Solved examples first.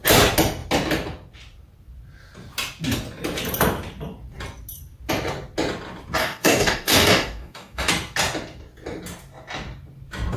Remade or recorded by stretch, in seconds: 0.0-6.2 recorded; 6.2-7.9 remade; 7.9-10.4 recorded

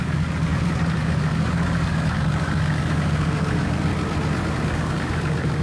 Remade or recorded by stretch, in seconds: 0.0-3.9 remade; 3.9-4.6 recorded; 4.6-5.6 remade

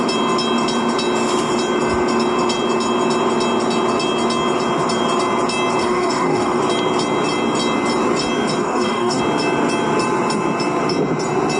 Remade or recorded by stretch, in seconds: 0.0-5.8 recorded; 5.8-6.6 remade; 6.6-8.6 recorded; 8.6-9.2 remade; 9.2-11.6 recorded